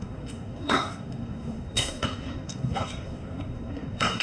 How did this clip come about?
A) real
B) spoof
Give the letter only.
B